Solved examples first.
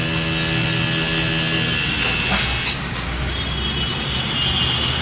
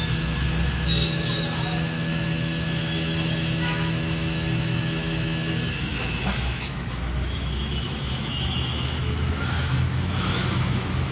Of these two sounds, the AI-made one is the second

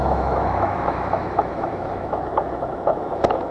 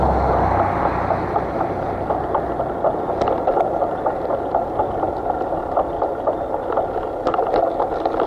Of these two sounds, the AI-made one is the first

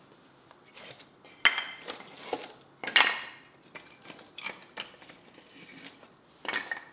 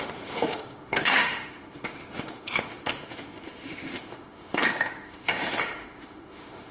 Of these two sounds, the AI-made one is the second